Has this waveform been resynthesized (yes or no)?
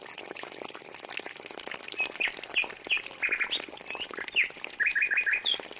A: no